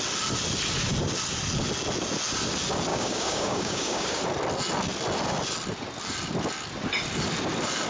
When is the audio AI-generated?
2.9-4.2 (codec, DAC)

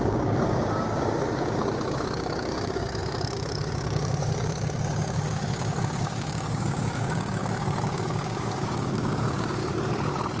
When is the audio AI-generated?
0.0-9.6 (codec, DAC)

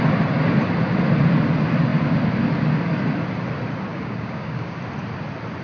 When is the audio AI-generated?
3.9-4.8 (codec, DAC)

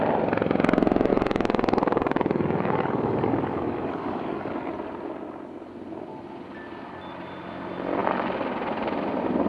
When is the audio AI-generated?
1.1-4.7 (codec, DAC)

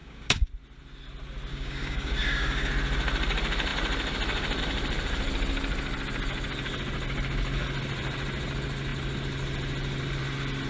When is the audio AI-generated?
0.0-0.5 (codec, DAC); 1.5-2.7

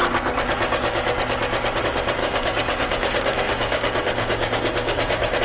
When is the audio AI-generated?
2.2-5.4 (codec, DAC)

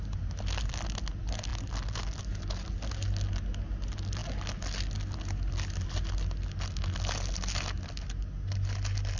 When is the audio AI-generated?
none